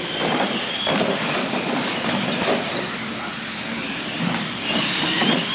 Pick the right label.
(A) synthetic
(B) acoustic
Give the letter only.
B